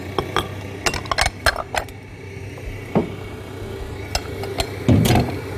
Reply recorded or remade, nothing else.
recorded